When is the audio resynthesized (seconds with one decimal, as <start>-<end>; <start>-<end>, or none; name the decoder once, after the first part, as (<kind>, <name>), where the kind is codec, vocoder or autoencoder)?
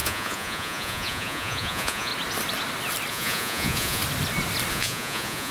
0.0-2.1 (vocoder, Vocos); 3.1-4.0; 4.7-5.5